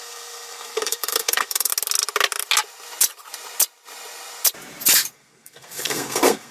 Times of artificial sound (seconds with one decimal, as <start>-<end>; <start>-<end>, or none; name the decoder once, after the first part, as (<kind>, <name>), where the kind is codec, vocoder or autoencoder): 0.0-1.7 (codec, SNAC); 5.1-6.5

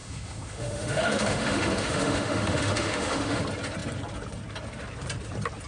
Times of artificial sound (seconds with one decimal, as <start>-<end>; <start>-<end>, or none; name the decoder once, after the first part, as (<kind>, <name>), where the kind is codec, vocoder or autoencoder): 0.0-3.4 (autoencoder, DAC-VAE)

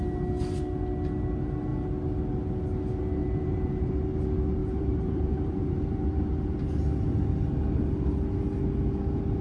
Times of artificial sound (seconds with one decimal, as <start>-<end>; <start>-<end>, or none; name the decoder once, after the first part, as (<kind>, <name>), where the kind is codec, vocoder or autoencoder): 3.2-3.9 (vocoder, BigVGAN v2); 4.6-5.9

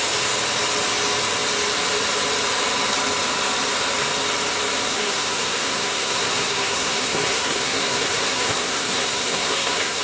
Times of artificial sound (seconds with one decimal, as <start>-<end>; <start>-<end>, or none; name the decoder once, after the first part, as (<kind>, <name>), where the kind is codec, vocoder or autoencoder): 4.9-10.0 (codec, SNAC)

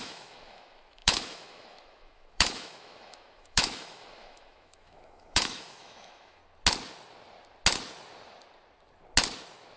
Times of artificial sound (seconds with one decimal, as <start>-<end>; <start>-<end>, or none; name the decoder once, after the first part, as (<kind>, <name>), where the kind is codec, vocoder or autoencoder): 0.0-6.4 (autoencoder, DAC-VAE)

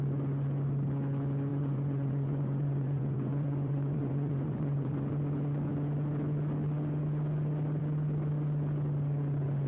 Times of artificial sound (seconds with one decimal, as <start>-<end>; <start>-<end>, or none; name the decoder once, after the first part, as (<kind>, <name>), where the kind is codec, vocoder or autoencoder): 1.5-5.1 (vocoder, Vocos)

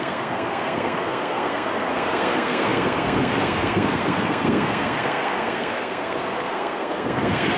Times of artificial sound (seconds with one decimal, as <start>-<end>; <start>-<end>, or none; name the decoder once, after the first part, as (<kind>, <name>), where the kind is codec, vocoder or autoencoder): 0.0-7.6 (codec, SNAC)

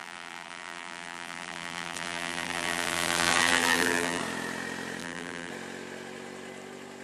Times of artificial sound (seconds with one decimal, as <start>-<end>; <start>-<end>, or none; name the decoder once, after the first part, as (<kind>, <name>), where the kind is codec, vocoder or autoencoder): 0.0-4.2 (vocoder, BigVGAN v2); 5.0-5.5